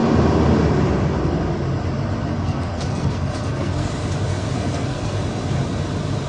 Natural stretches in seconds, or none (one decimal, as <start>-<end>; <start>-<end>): 0.0-2.3; 3.9-4.3; 5.2-6.3